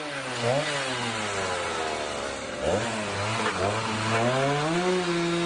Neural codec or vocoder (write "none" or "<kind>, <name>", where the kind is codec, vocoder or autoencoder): none